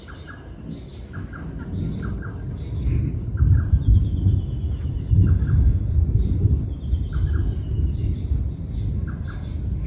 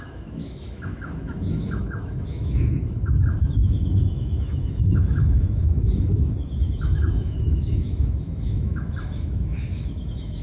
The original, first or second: first